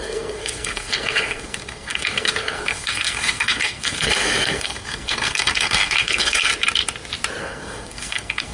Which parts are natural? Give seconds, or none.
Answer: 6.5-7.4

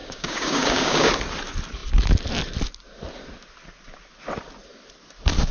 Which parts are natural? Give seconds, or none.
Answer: 1.1-5.5

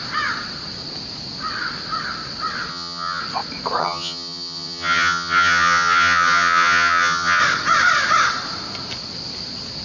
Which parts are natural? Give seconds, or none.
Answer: 0.0-2.7; 3.2-3.8; 7.4-9.8

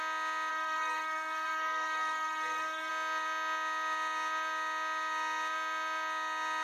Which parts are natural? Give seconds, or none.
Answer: 0.0-0.5; 2.9-6.6

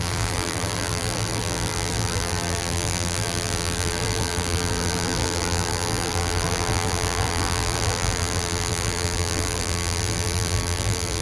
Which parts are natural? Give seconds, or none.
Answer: none